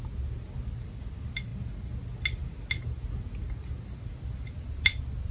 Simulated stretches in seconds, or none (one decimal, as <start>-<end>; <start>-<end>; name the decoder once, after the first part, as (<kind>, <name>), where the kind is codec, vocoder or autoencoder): none